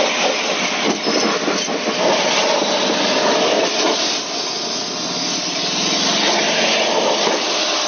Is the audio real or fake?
real